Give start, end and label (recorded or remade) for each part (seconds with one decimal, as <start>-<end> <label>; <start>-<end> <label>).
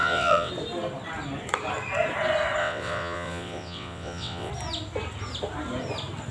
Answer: 0.0-0.5 remade; 0.5-2.6 recorded; 2.6-4.5 remade; 4.5-6.3 recorded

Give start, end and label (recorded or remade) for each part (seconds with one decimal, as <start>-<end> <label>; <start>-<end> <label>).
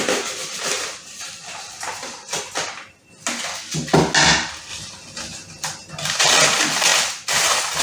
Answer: 0.0-0.4 recorded; 0.4-2.4 remade; 2.4-7.8 recorded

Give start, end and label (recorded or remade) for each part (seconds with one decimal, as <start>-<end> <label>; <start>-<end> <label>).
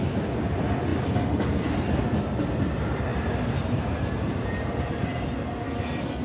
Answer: 0.0-6.2 recorded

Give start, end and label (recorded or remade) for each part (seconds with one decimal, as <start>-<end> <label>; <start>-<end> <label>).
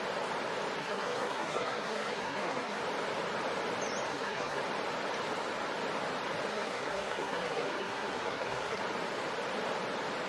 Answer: 0.0-0.8 recorded; 0.8-2.8 remade; 2.8-4.1 recorded; 4.1-4.6 remade; 4.6-6.5 recorded; 6.5-8.8 remade; 8.8-10.3 recorded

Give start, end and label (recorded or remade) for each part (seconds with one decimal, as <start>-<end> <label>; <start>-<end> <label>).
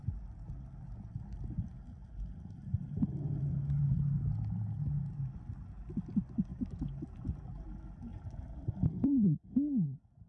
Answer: 0.0-8.1 recorded; 8.1-9.1 remade; 9.1-10.3 recorded